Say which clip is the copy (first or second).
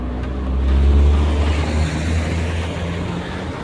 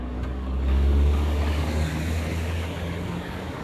second